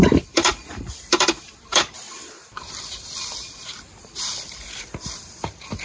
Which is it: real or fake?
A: fake